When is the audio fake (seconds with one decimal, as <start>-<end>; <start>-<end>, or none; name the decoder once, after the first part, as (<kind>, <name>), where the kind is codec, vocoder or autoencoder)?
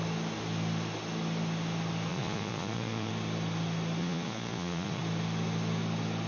2.1-3.1 (vocoder, Vocos); 4.0-5.0